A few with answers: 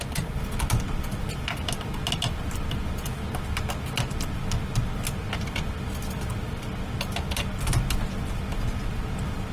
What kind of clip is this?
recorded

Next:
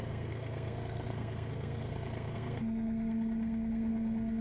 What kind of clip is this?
remade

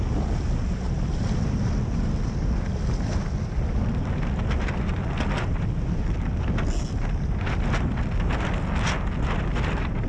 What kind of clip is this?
recorded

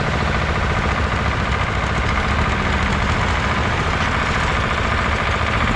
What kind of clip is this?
recorded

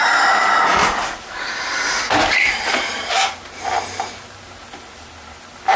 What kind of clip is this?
recorded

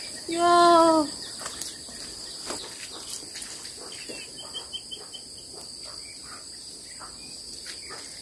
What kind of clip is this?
recorded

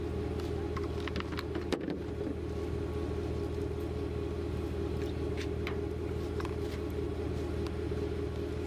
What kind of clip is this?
recorded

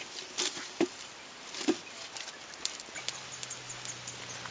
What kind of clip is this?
recorded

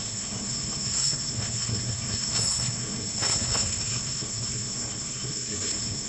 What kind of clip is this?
remade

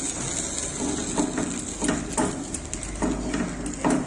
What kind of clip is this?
recorded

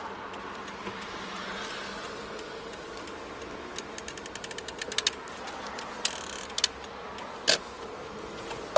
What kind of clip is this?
recorded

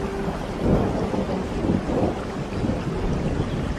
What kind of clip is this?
recorded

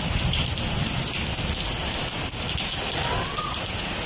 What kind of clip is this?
recorded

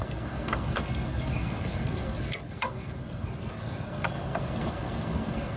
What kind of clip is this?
remade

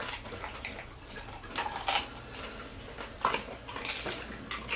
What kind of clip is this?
recorded